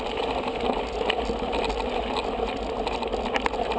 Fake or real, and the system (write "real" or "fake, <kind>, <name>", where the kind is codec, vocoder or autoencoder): real